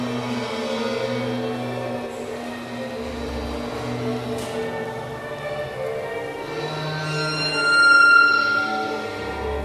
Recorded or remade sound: recorded